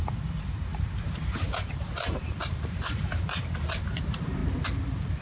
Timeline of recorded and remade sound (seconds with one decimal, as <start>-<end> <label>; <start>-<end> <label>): 0.0-4.4 remade; 4.4-5.2 recorded